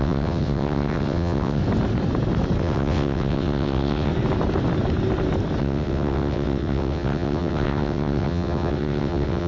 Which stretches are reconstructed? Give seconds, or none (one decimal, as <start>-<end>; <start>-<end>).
0.0-1.6; 2.6-4.1; 5.6-9.5